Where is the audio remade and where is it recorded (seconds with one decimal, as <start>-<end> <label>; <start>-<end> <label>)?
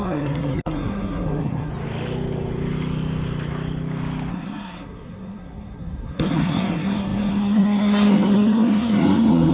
0.0-1.7 remade; 1.7-4.3 recorded; 4.3-9.5 remade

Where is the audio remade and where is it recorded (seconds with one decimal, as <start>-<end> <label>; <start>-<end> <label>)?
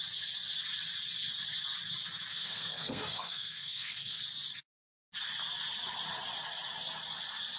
0.0-2.3 recorded; 2.3-4.2 remade; 4.2-7.6 recorded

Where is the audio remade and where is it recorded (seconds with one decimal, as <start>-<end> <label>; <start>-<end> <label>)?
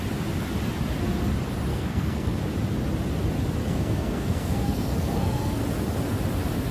0.0-1.7 recorded; 1.7-2.4 remade; 2.4-3.6 recorded; 3.6-5.6 remade; 5.6-6.7 recorded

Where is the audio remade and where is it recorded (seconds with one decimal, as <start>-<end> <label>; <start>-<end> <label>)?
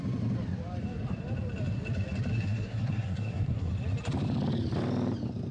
0.0-2.3 recorded; 2.3-3.7 remade; 3.7-5.5 recorded